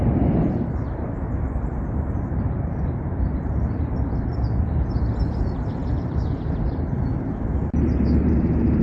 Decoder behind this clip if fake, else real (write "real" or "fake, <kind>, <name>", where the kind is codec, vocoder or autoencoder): fake, vocoder, BigVGAN v2